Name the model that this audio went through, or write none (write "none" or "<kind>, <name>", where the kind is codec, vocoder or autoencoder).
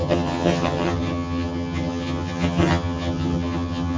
vocoder, HiFi-GAN